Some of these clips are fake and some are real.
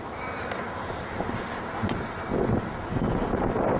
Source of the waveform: real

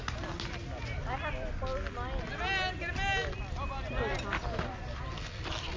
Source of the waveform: real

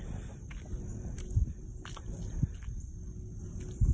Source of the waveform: real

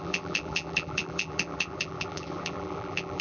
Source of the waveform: fake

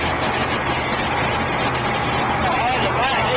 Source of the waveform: real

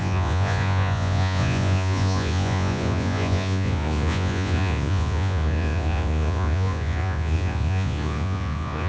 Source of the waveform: fake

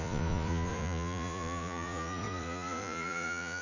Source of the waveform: fake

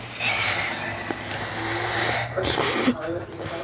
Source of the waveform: real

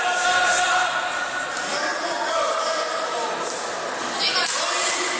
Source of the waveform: real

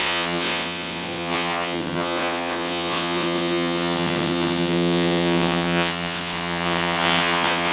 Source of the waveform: fake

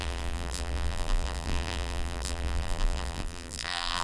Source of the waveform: fake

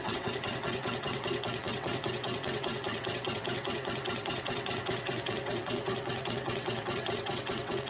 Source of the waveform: fake